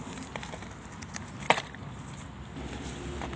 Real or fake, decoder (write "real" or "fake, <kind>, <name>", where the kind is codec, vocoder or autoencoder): real